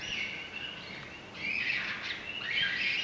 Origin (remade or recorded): recorded